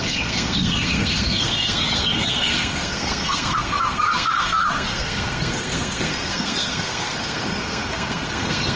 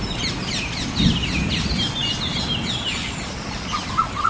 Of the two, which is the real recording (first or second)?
second